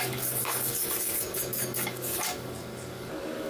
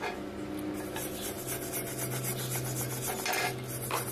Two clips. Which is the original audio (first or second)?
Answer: second